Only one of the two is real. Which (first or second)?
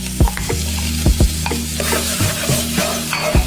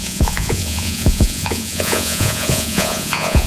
first